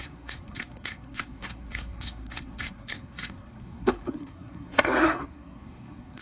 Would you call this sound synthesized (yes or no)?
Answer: yes